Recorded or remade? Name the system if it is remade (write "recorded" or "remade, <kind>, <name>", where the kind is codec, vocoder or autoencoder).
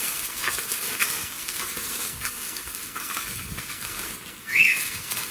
remade, codec, SNAC